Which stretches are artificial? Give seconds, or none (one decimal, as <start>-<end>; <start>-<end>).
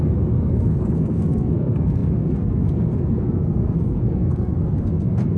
0.0-5.4